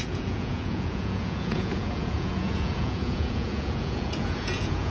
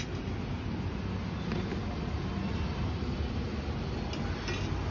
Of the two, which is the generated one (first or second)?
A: first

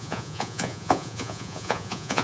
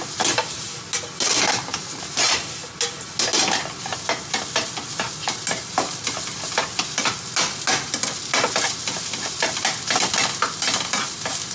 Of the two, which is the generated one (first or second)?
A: first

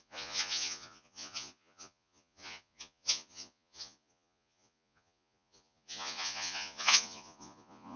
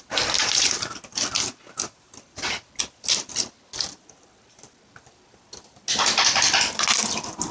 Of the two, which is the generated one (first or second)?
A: first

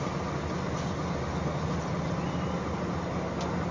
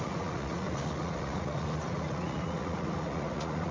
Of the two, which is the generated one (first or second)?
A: second